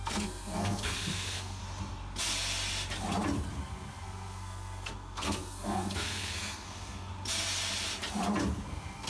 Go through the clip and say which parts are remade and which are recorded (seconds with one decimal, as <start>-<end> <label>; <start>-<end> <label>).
0.0-1.6 remade; 1.6-3.5 recorded; 3.5-7.1 remade; 7.1-8.5 recorded; 8.5-9.1 remade